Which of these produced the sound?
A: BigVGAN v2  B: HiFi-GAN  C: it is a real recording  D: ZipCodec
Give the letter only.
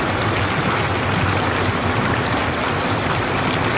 C